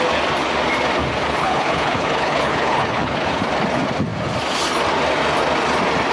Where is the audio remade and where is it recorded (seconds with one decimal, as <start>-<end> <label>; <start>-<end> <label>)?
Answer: 0.0-1.4 recorded; 1.4-3.5 remade; 3.5-6.1 recorded